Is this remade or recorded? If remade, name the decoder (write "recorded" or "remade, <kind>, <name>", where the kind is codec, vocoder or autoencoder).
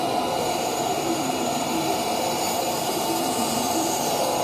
remade, vocoder, BigVGAN v2